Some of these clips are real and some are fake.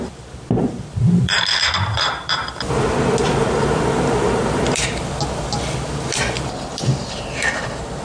fake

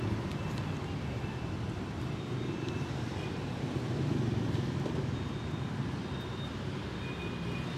real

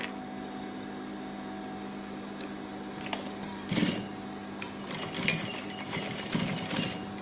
real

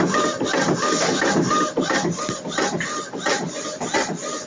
fake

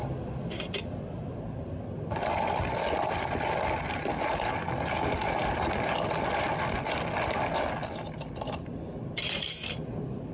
real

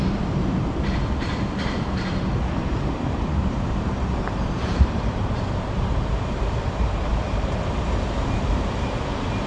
fake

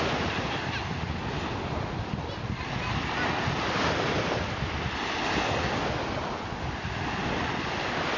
real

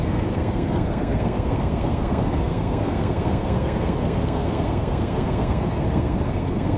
fake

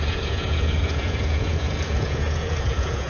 fake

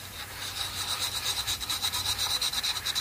fake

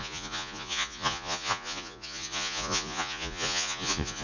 fake